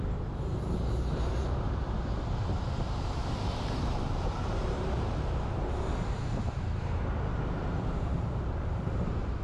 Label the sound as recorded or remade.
remade